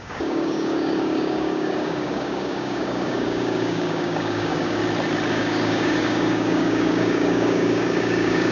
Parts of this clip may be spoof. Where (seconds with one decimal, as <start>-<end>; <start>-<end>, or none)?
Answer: 0.0-4.8; 5.3-8.5